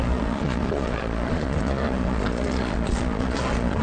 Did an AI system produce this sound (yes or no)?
yes